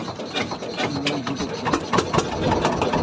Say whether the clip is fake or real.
real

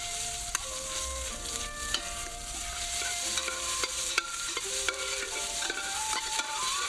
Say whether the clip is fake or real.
fake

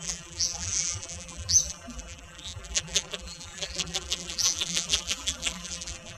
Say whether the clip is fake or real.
fake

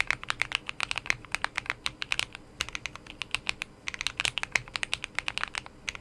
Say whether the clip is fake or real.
real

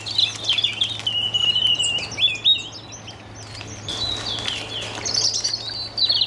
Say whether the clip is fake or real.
real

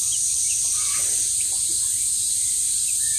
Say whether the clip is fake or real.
fake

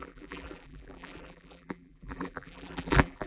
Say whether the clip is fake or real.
fake